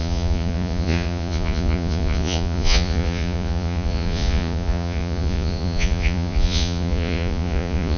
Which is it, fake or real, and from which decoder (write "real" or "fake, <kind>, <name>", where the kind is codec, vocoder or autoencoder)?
fake, vocoder, Vocos